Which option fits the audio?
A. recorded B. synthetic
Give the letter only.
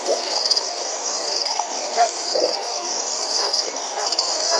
B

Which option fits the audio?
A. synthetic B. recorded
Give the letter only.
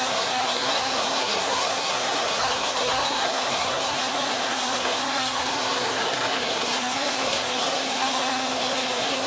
A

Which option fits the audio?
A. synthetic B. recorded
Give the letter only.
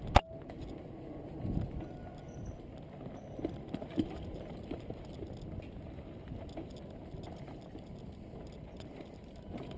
B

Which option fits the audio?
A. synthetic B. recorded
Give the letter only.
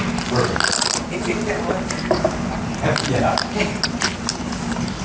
B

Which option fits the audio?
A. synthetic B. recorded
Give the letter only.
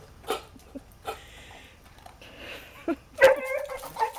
A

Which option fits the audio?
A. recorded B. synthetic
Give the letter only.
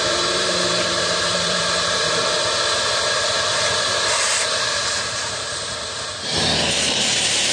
B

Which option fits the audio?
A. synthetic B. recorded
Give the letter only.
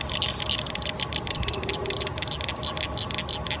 B